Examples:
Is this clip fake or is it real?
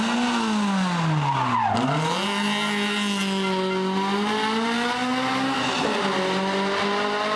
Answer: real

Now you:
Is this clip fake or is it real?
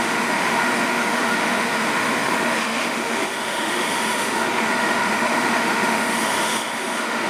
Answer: fake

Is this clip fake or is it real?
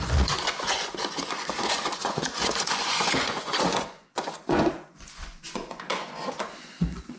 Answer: fake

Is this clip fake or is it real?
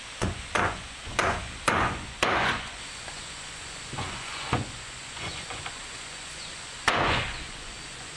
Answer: fake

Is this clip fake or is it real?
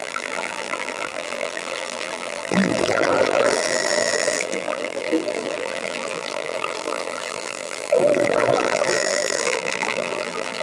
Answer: fake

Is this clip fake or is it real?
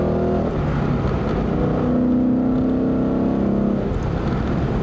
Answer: real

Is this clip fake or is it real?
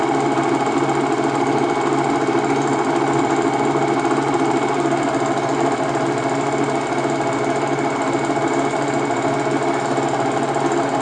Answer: real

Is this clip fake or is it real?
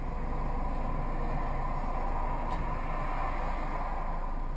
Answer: real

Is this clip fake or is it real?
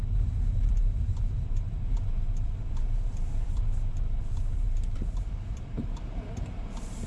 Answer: fake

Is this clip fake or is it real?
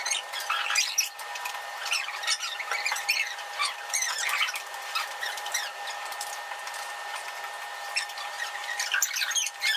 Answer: fake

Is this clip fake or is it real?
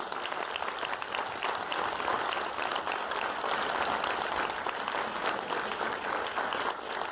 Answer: real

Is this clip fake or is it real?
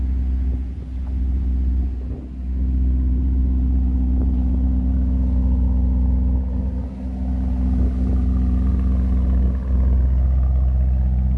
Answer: real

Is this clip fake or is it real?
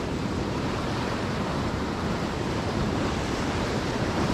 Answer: fake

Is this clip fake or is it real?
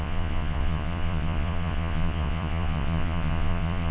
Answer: fake